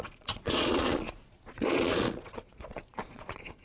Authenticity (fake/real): fake